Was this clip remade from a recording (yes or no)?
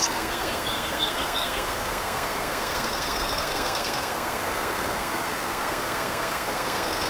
yes